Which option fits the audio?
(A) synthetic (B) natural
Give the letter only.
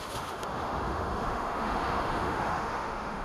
A